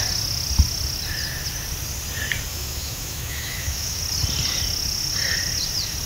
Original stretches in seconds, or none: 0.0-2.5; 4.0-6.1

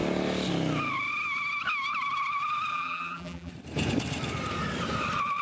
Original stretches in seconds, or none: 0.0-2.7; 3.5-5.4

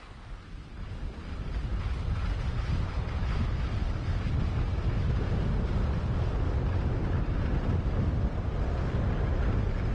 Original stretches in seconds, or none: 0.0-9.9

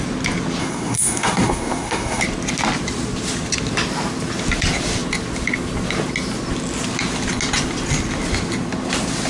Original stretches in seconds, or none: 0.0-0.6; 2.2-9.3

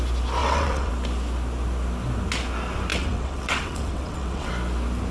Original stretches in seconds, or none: 0.0-0.4; 0.9-2.9; 4.5-5.1

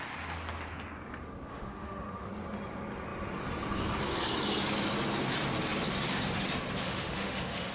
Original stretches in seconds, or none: 0.0-1.5; 2.3-6.8

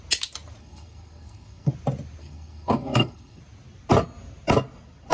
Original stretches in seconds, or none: 0.0-0.6; 1.7-2.2; 3.4-5.1

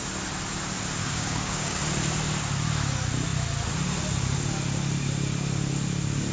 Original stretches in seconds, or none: 0.0-1.0; 1.8-6.3